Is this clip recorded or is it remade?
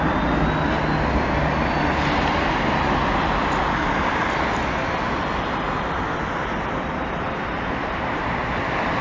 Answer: recorded